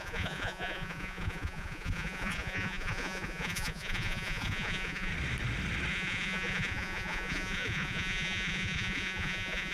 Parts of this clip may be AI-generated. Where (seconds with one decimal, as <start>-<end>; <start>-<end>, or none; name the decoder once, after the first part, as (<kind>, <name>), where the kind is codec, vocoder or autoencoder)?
0.0-5.1 (vocoder, Vocos); 5.9-9.7